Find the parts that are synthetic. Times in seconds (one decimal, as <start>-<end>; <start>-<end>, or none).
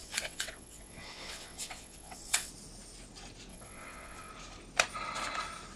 0.0-2.5; 3.5-4.3